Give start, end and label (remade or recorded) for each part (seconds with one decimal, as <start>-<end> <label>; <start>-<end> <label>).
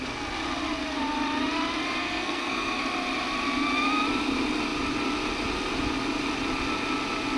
0.0-2.0 recorded; 2.0-2.8 remade; 2.8-7.4 recorded